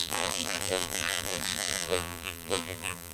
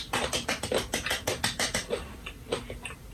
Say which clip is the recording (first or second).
second